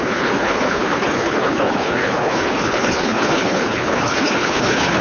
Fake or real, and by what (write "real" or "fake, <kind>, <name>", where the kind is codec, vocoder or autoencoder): fake, codec, HILCodec